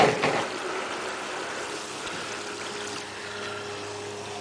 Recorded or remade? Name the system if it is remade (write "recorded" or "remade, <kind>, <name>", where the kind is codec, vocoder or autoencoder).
recorded